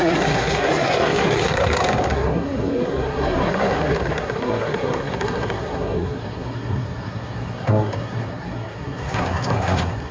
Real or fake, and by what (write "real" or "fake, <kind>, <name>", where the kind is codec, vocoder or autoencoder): fake, codec, SNAC